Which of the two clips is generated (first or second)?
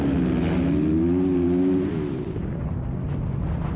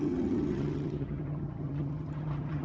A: second